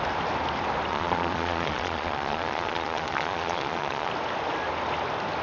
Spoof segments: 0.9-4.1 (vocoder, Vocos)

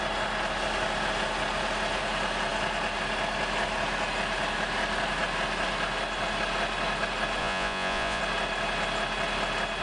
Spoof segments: 7.4-8.2 (vocoder, Vocos)

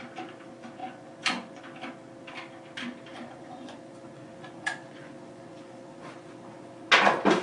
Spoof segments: 0.8-1.6 (vocoder, Vocos); 3.1-6.9

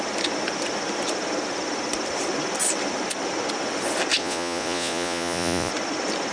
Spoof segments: 4.2-5.7 (vocoder, Vocos)

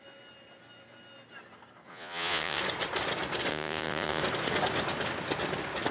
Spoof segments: 1.9-2.6 (vocoder, Vocos); 3.5-4.2

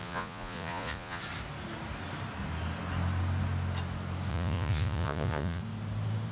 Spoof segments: 0.0-1.2 (vocoder, Vocos); 4.3-5.6

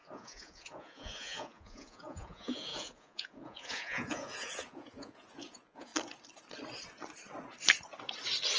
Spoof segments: 0.0-5.9 (vocoder, Vocos)

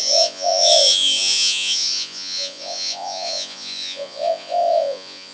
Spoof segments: 0.0-5.3 (vocoder, Vocos)